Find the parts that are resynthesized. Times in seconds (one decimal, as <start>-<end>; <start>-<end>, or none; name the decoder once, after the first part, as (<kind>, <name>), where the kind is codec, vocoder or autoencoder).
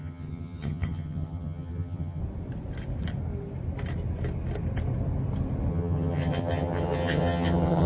0.0-2.2 (vocoder, HiFi-GAN); 5.7-7.9